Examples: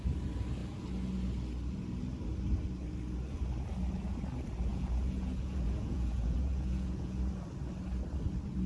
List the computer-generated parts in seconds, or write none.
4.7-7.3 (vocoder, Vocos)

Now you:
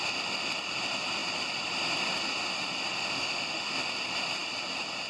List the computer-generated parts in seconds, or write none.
3.0-3.9 (autoencoder, DAC-VAE)

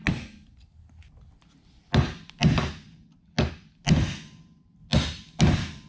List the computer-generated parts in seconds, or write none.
none

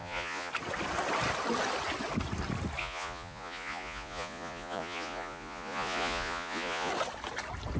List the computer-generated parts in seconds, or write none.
0.0-0.5 (vocoder, Vocos); 2.8-6.9

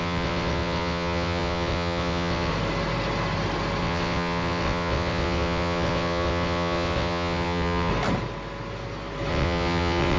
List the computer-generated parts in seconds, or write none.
0.0-2.5 (vocoder, WaveNeXt); 3.8-7.9; 9.3-10.2

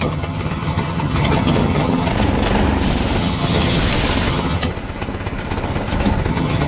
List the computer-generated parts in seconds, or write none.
0.0-2.1 (vocoder, HiFi-GAN); 3.2-3.8; 4.3-4.7; 6.3-6.7

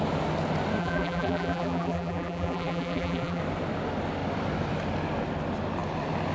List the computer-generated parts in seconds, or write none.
0.8-3.4 (vocoder, BigVGAN v2)

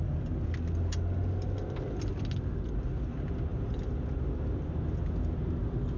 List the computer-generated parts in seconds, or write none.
none